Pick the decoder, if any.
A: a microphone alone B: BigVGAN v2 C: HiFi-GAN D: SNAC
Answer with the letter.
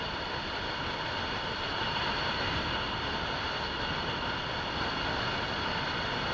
A